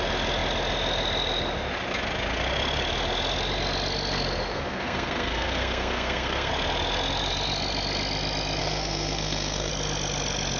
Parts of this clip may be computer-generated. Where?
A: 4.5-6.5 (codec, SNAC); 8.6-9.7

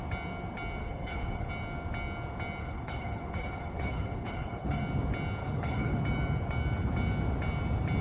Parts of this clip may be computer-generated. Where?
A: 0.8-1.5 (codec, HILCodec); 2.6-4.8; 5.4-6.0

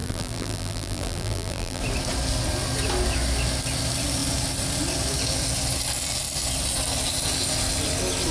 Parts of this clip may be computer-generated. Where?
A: 0.0-1.8 (vocoder, BigVGAN v2)

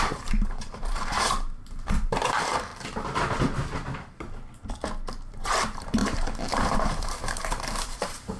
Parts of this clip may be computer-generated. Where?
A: 0.0-2.7 (vocoder, BigVGAN v2); 5.3-8.4